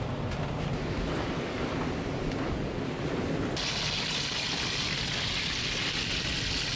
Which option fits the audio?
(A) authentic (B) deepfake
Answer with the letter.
A